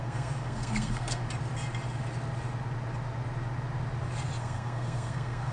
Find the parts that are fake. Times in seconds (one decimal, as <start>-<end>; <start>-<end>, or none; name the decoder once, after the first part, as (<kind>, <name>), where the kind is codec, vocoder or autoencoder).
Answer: 0.0-1.2 (codec, SNAC); 4.4-5.5